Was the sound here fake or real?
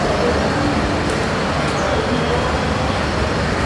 real